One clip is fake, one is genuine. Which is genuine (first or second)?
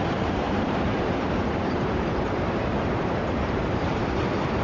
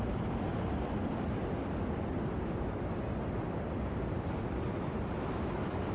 second